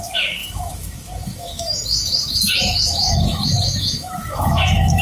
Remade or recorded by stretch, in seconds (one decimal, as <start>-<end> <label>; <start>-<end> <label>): 0.0-5.0 remade